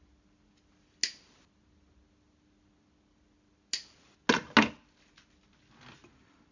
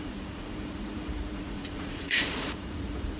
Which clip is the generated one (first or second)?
second